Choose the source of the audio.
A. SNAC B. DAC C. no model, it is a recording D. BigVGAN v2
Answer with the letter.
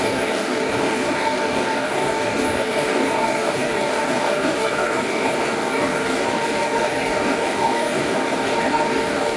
B